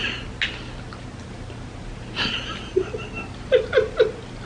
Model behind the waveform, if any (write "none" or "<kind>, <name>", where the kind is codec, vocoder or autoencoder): none